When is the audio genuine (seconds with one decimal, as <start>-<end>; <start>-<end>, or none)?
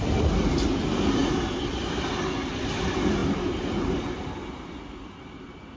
0.0-5.8